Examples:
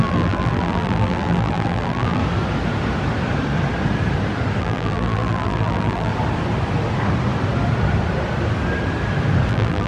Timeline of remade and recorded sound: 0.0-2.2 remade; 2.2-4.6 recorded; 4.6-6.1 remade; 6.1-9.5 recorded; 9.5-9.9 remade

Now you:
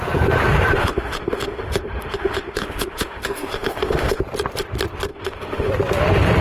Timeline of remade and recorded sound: 0.0-0.8 recorded; 0.8-4.2 remade; 4.2-5.1 recorded; 5.1-5.7 remade; 5.7-6.4 recorded

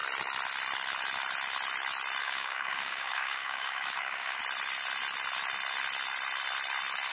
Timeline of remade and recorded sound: 0.0-2.2 recorded; 2.2-4.4 remade; 4.4-7.1 recorded

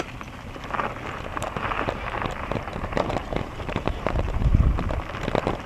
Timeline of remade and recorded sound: 0.0-1.3 recorded; 1.3-4.7 remade; 4.7-5.7 recorded

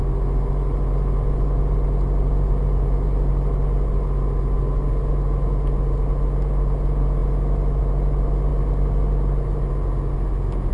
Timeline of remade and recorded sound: 0.0-10.7 recorded

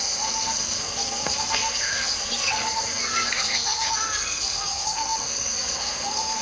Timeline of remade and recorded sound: 0.0-6.4 remade